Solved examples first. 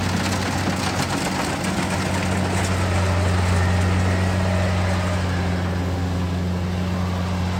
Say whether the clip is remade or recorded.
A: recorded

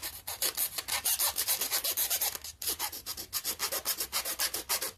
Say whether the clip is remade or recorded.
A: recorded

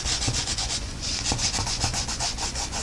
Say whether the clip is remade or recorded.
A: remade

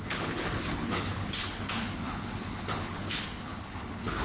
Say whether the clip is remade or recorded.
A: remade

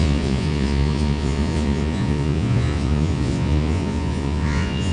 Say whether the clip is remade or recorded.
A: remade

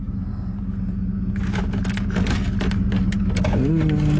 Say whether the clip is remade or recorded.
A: recorded